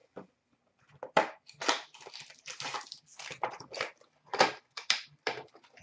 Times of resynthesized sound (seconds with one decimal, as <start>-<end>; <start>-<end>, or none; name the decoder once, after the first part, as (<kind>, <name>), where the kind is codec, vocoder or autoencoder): 4.3-5.8 (vocoder, BigVGAN v2)